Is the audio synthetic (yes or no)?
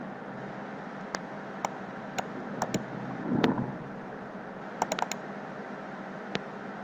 no